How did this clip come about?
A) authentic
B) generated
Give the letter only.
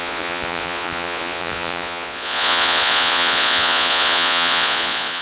B